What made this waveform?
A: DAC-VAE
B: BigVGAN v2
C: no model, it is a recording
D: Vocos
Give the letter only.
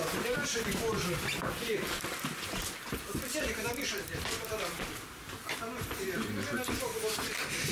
C